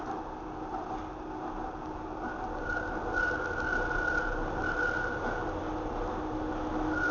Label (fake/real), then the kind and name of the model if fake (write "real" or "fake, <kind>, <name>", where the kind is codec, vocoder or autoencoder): real